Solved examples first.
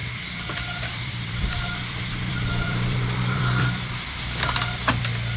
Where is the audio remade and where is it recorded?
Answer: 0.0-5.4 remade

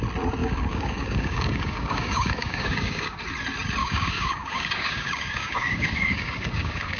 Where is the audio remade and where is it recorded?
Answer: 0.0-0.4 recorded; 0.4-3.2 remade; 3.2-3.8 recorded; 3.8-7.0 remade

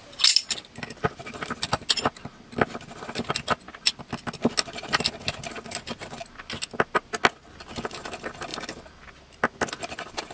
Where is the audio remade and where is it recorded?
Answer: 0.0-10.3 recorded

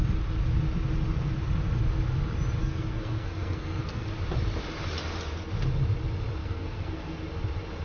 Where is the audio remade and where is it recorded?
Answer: 0.0-2.6 recorded; 2.6-4.1 remade; 4.1-6.4 recorded; 6.4-7.2 remade; 7.2-7.8 recorded

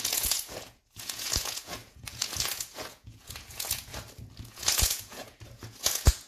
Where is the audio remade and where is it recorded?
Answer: 0.0-3.9 remade; 3.9-4.5 recorded; 4.5-6.3 remade

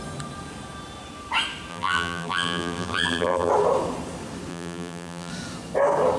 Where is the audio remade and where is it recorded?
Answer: 0.0-1.7 recorded; 1.7-3.5 remade; 3.5-4.5 recorded; 4.5-5.3 remade; 5.3-6.2 recorded

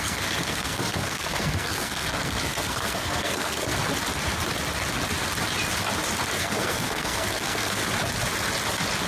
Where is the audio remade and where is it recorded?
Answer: 0.0-3.8 remade; 3.8-6.4 recorded; 6.4-7.8 remade; 7.8-9.1 recorded

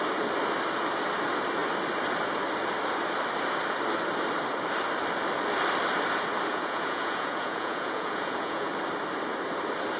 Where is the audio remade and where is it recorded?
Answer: 0.0-6.5 recorded; 6.5-8.7 remade; 8.7-10.0 recorded